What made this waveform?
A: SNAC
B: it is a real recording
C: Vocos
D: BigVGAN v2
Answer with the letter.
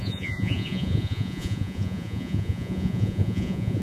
C